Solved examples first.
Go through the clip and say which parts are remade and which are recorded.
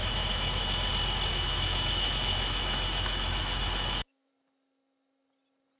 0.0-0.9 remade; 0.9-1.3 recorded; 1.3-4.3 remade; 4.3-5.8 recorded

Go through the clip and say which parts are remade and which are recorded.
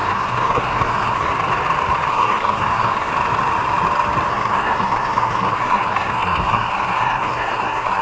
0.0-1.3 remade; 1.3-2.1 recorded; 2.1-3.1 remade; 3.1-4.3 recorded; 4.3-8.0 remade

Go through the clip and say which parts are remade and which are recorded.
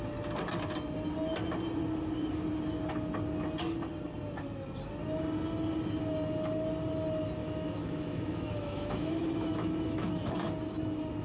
0.0-7.4 recorded; 7.4-10.5 remade; 10.5-11.2 recorded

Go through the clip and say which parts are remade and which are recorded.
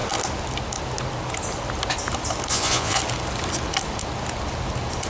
0.0-2.5 recorded; 2.5-3.0 remade; 3.0-5.1 recorded